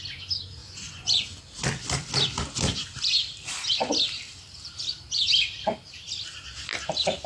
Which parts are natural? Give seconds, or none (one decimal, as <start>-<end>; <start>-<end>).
0.0-0.6; 1.4-7.3